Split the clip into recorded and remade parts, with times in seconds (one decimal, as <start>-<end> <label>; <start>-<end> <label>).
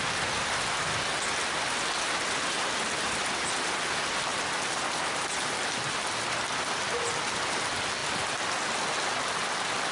0.0-9.9 recorded